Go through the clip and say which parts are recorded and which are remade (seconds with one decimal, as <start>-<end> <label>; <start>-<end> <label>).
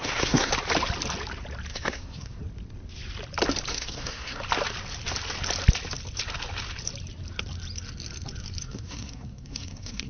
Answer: 0.0-0.5 remade; 0.5-1.7 recorded; 1.7-2.4 remade; 2.4-3.7 recorded; 3.7-4.4 remade; 4.4-8.6 recorded; 8.6-10.1 remade